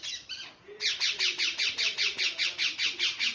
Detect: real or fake real